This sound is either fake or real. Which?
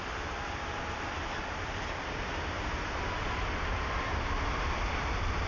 real